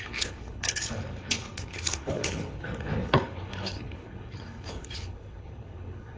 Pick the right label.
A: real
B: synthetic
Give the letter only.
B